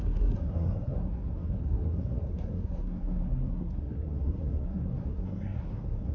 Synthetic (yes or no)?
yes